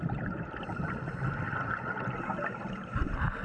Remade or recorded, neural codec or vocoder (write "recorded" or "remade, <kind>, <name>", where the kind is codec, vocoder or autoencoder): recorded